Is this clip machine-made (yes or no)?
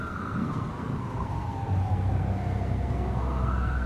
yes